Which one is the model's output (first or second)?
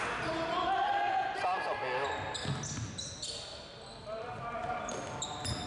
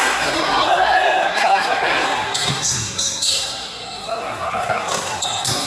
second